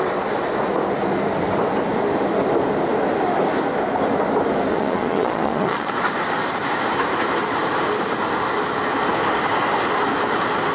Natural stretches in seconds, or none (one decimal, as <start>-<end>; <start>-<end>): 0.0-4.7; 5.9-10.7

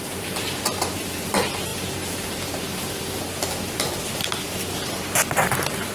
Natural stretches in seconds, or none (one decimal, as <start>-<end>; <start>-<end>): 0.0-5.9

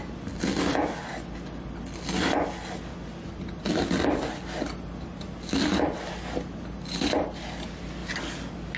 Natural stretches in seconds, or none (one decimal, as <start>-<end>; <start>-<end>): 0.0-8.8

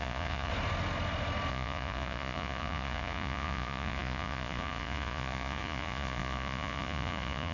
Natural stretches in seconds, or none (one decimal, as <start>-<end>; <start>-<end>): 0.5-1.5